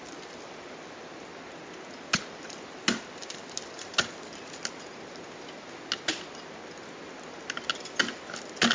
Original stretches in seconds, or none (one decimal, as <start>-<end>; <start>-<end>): 0.0-8.7